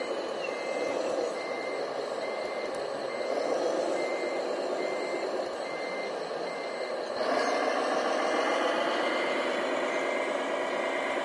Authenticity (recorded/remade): recorded